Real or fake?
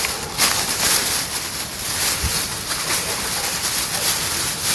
fake